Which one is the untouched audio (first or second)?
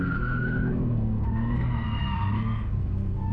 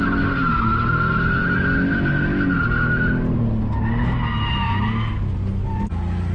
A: second